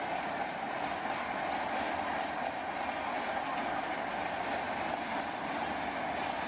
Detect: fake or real real